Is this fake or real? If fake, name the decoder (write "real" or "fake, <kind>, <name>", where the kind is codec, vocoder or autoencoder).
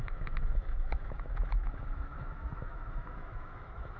fake, autoencoder, DAC-VAE